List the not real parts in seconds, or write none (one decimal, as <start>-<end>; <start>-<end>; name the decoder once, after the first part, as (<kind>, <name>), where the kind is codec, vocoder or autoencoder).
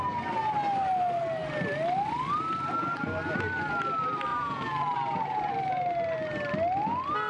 4.3-5.5 (vocoder, Vocos)